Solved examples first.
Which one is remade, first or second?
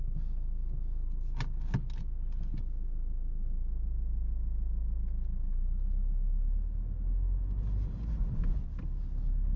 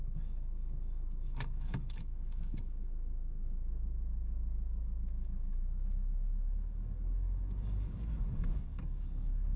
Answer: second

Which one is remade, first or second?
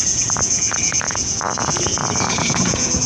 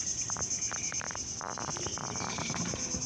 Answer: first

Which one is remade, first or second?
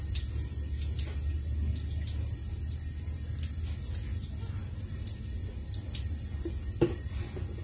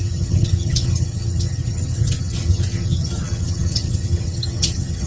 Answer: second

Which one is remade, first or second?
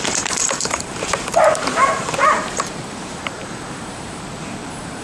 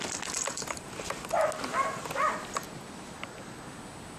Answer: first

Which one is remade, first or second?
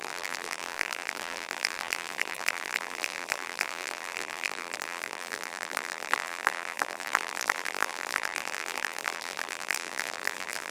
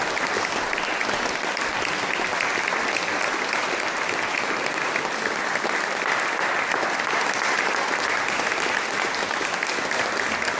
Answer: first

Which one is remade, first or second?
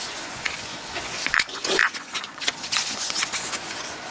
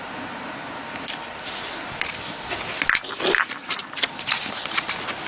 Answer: first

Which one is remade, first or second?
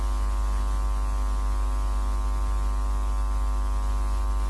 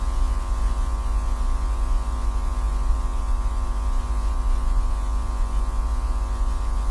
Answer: second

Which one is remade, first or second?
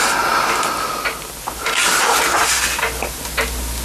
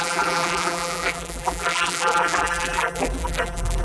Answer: second